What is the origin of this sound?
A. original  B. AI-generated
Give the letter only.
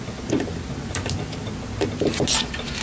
A